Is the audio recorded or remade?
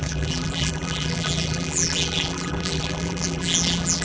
remade